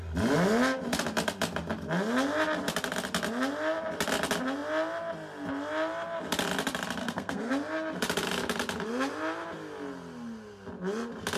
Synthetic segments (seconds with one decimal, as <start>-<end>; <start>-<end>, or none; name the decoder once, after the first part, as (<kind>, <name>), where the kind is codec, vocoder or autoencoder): 7.0-7.5 (codec, SNAC)